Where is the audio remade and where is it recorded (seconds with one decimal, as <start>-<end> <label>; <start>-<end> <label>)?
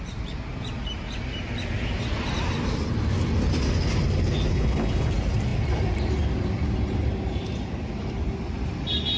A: 0.0-4.5 recorded; 4.5-5.1 remade; 5.1-9.2 recorded